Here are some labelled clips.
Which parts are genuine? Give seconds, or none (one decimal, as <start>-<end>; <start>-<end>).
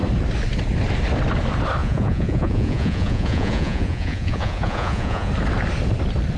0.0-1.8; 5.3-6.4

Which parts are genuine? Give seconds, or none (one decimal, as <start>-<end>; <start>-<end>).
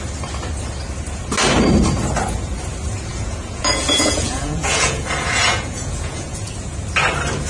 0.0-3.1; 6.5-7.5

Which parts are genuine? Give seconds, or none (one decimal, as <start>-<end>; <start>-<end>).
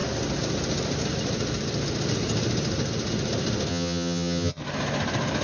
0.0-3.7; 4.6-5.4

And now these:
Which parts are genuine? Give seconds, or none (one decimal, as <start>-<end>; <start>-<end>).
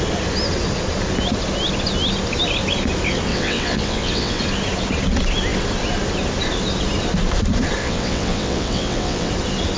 0.0-3.3; 4.4-7.8; 9.3-9.8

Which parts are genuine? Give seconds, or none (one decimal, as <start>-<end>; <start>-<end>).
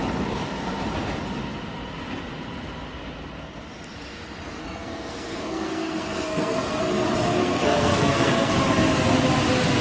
0.0-4.6; 6.9-7.4; 8.5-9.8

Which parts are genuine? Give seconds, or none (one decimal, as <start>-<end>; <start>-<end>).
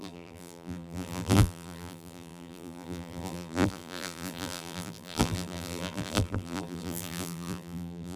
none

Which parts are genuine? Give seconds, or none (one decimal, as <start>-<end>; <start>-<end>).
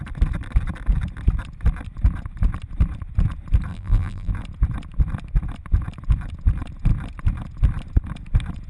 0.0-3.7; 4.3-8.7